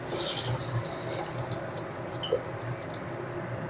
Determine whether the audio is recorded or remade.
recorded